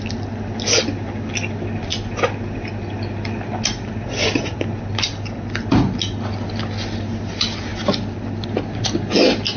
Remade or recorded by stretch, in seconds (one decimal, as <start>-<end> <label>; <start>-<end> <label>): 0.0-9.6 recorded